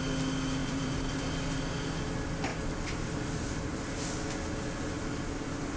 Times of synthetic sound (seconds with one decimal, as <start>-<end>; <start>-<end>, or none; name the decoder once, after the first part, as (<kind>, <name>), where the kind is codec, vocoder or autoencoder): 0.6-1.2 (vocoder, BigVGAN v2)